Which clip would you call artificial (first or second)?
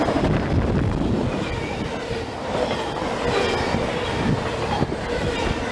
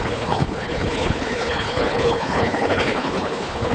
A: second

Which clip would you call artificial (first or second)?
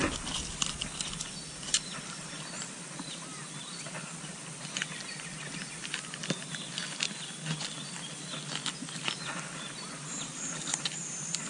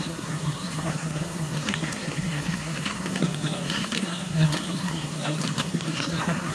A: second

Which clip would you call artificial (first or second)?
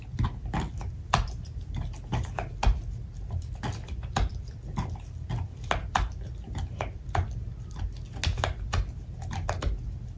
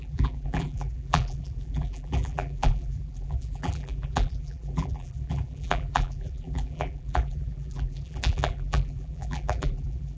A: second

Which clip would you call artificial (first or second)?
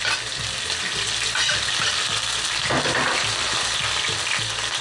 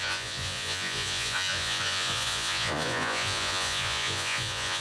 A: second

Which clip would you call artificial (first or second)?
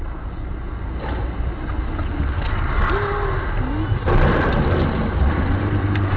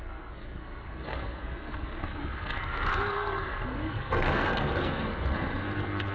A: second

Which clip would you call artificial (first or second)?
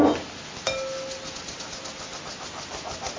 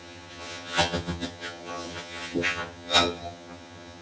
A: second